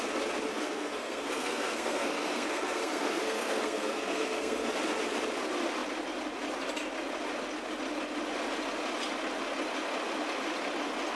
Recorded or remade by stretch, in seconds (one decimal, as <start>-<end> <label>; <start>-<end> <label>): 0.0-0.5 recorded; 0.5-4.7 remade; 4.7-11.1 recorded